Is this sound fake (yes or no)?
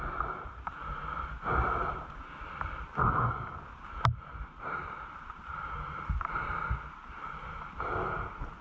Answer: no